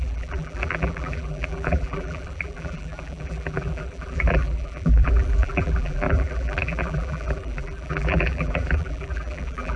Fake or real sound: fake